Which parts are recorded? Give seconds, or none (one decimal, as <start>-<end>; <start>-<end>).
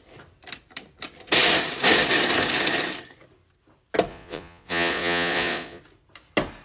0.0-4.1; 5.8-6.6